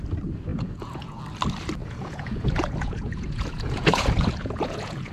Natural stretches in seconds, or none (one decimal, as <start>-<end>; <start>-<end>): 0.0-0.5; 1.2-1.8